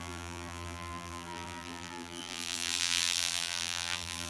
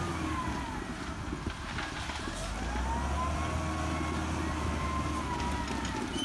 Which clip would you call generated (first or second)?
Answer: first